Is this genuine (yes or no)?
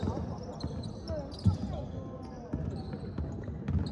yes